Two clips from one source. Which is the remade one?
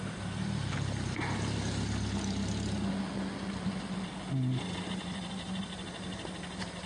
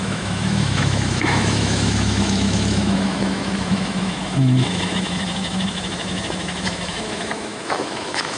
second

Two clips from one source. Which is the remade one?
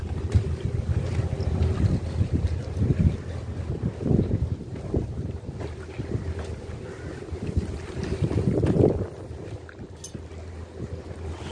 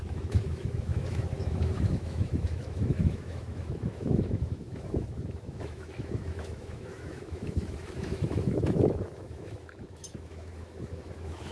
second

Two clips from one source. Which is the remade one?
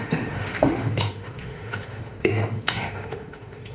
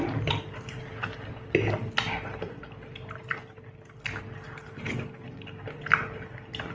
first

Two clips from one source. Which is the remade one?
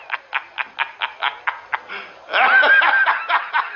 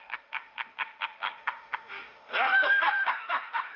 second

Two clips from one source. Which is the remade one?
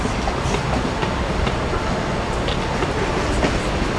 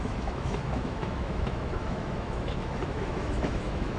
second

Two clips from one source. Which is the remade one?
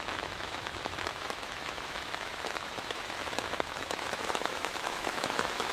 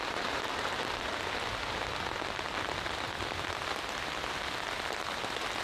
first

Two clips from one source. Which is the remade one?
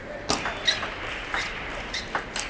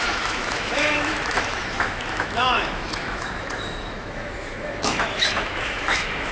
second